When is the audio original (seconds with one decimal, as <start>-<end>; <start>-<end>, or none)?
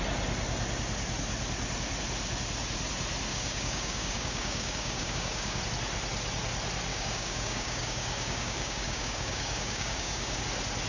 0.0-3.3; 5.6-6.9; 10.4-10.9